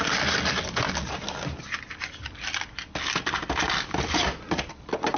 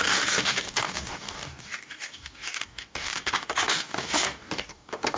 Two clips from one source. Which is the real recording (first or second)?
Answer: first